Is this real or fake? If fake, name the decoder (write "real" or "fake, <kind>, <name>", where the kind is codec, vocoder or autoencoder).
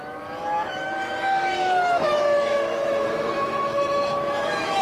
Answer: fake, autoencoder, DAC-VAE